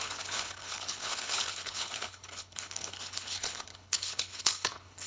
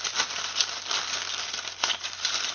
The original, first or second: second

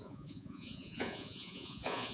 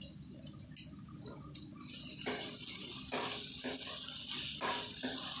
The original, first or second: second